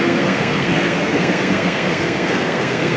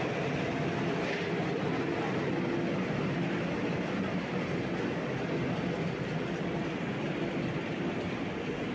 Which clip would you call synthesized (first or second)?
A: first